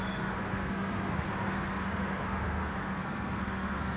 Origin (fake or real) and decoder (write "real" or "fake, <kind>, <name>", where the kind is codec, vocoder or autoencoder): fake, codec, SNAC